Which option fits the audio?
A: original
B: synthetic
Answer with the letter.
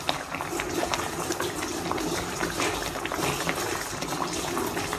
A